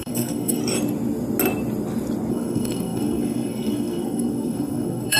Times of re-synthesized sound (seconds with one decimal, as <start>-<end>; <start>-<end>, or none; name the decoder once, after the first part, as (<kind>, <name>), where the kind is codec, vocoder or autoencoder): 0.0-0.6 (codec, SNAC); 2.3-5.2